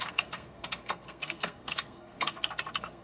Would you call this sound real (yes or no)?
no